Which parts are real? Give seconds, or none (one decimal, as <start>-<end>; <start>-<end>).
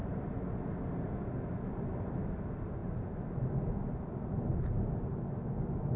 0.6-2.8; 4.1-6.0